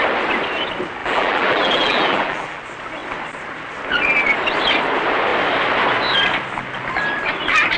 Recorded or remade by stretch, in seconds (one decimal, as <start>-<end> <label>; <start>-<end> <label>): 0.0-1.0 recorded; 1.0-2.6 remade; 2.6-7.8 recorded

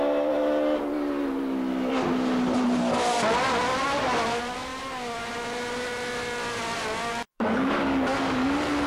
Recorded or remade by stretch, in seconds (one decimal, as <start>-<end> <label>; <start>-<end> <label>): 0.0-7.3 recorded; 7.3-8.9 remade

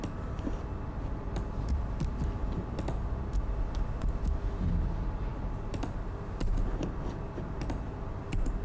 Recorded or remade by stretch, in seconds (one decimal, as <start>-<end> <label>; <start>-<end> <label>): 0.0-8.6 recorded

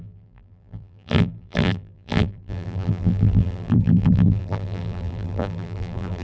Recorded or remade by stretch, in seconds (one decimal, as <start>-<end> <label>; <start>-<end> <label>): 0.0-6.2 remade

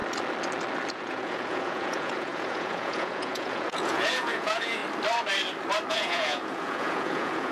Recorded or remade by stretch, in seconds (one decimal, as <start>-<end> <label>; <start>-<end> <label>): 0.0-0.9 recorded; 0.9-4.8 remade; 4.8-5.9 recorded; 5.9-7.5 remade

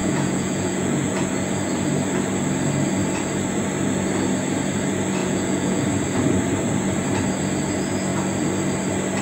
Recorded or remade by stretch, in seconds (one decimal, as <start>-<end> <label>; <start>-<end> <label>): 0.0-1.3 remade; 1.3-5.2 recorded; 5.2-5.8 remade; 5.8-9.2 recorded